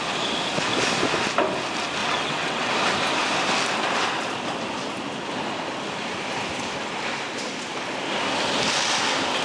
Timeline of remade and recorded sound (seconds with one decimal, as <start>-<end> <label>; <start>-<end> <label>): 0.0-2.0 recorded; 2.0-2.7 remade; 2.7-9.4 recorded